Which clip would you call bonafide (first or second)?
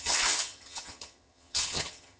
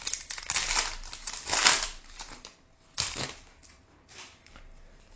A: second